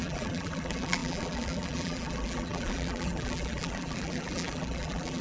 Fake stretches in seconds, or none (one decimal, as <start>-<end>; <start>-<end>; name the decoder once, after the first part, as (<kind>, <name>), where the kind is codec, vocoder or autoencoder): 0.0-5.2 (vocoder, BigVGAN v2)